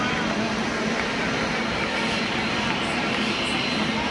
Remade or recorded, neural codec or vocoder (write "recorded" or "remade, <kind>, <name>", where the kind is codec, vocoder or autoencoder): recorded